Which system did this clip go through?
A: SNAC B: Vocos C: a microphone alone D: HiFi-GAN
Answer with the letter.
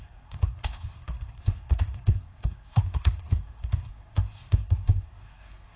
A